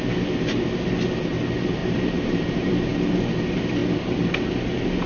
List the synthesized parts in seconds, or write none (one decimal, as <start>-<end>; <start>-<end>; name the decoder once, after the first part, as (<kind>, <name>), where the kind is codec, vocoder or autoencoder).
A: 1.8-2.7 (vocoder, BigVGAN v2)